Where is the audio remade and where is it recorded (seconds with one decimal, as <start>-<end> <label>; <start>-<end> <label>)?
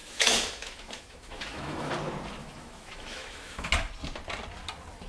0.0-1.9 remade; 1.9-2.4 recorded; 2.4-3.7 remade; 3.7-5.1 recorded